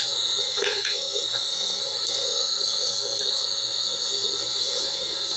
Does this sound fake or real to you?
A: fake